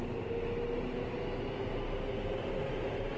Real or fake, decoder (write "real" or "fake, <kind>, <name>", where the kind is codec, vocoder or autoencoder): real